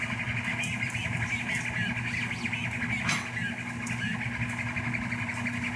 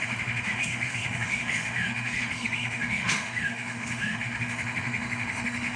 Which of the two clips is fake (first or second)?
second